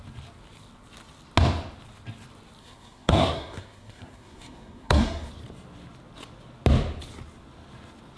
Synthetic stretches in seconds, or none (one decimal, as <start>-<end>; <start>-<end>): 2.6-5.3